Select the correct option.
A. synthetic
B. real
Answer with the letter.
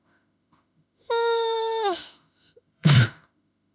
A